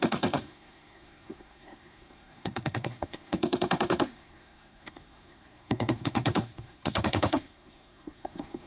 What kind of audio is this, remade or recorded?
remade